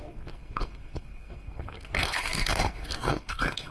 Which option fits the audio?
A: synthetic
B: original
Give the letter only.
A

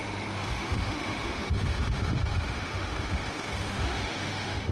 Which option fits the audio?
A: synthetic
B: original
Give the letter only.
A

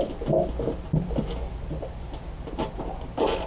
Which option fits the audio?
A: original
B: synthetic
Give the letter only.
A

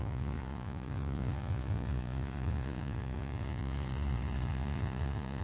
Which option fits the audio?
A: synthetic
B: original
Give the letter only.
A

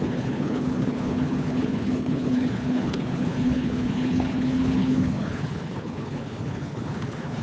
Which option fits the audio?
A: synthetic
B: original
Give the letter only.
A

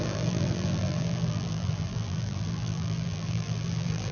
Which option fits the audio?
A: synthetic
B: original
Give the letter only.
A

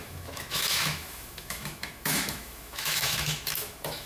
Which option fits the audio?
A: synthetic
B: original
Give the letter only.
A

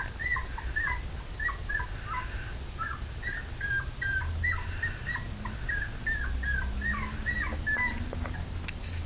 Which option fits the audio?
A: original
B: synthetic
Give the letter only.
A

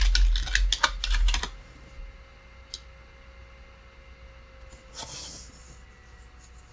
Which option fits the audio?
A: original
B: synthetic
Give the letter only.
A